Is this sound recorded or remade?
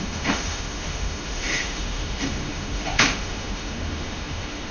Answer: remade